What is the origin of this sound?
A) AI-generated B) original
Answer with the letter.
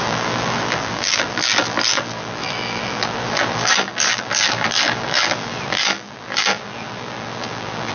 A